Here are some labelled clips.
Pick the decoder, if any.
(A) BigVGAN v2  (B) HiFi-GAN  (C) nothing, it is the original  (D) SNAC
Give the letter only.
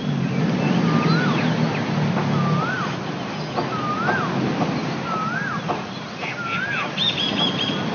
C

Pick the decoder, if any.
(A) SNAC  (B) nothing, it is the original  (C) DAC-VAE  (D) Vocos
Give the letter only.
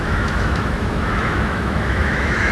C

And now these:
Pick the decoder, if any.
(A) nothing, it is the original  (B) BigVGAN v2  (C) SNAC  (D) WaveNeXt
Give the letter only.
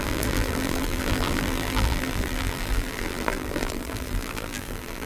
B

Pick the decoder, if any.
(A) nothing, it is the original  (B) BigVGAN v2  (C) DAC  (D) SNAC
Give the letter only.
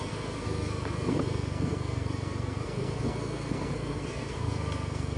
D